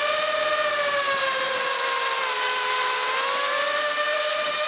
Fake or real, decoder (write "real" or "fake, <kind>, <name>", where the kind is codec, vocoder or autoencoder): fake, vocoder, BigVGAN v2